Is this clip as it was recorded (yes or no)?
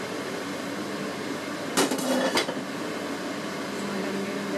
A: yes